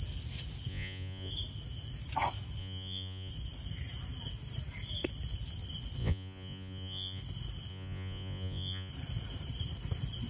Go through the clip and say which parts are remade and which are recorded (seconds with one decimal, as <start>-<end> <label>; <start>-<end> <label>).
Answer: 0.0-0.7 recorded; 0.7-1.3 remade; 1.3-2.6 recorded; 2.6-3.3 remade; 3.3-6.0 recorded; 6.0-7.2 remade; 7.2-7.7 recorded; 7.7-8.9 remade; 8.9-10.3 recorded